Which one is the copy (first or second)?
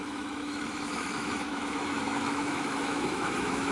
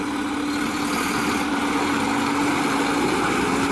first